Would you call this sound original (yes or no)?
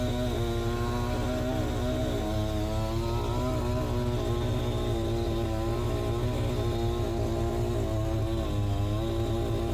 yes